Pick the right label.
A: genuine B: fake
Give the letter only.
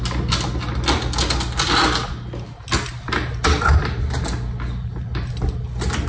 A